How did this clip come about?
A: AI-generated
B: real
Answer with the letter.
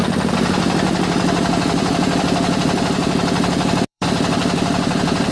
A